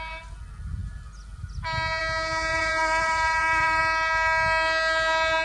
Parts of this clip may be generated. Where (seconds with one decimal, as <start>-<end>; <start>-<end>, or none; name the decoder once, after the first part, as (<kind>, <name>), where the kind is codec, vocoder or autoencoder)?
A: 2.5-3.8 (vocoder, BigVGAN v2)